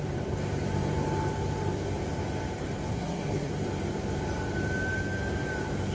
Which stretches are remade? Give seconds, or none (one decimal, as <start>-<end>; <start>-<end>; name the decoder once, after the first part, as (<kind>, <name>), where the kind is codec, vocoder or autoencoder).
2.9-3.5 (codec, SNAC)